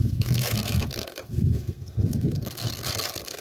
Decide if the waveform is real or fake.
fake